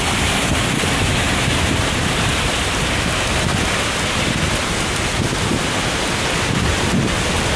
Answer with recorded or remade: recorded